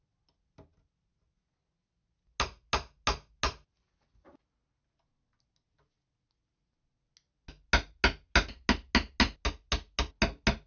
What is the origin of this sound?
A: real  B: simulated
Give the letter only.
A